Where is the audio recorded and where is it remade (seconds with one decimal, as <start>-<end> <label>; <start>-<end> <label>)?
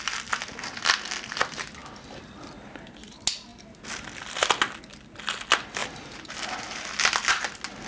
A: 0.0-3.5 recorded; 3.5-4.8 remade; 4.8-7.9 recorded